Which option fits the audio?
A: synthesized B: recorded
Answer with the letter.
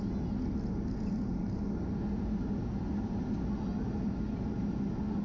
B